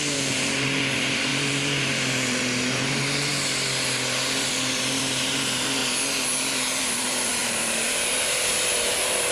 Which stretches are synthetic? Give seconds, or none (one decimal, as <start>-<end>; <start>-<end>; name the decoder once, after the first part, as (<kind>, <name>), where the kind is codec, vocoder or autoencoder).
0.0-5.8 (vocoder, BigVGAN v2); 6.8-9.3